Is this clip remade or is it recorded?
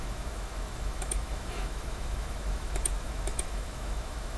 remade